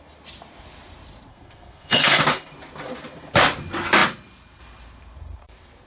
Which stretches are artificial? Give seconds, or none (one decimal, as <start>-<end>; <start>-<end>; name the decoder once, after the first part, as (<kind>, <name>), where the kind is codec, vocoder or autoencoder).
1.3-2.2 (codec, SNAC)